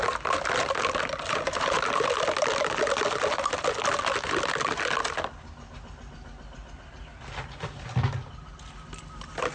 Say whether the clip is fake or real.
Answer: real